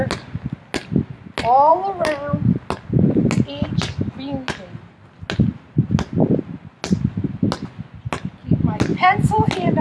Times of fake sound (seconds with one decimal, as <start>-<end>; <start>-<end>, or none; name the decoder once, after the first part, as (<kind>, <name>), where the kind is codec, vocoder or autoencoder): none